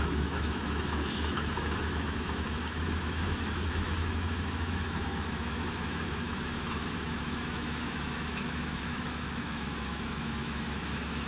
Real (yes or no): no